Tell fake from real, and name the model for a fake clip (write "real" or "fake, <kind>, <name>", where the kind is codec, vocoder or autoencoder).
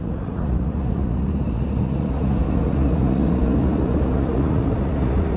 fake, vocoder, Vocos